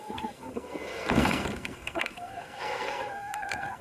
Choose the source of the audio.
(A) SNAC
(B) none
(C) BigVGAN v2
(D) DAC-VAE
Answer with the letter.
A